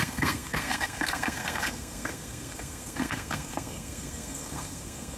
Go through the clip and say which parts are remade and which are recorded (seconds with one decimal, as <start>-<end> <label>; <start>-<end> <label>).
0.0-5.2 remade